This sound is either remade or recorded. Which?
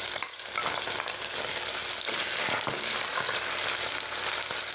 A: recorded